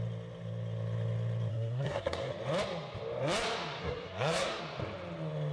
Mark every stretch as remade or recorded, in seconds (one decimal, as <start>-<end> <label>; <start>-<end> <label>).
0.0-1.5 recorded; 1.5-2.3 remade; 2.3-3.8 recorded; 3.8-4.6 remade; 4.6-5.5 recorded